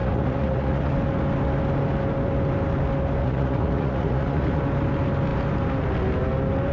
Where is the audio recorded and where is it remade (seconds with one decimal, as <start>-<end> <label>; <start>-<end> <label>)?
0.0-0.9 remade; 0.9-3.2 recorded; 3.2-4.6 remade; 4.6-6.7 recorded